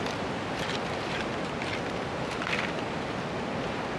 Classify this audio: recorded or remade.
recorded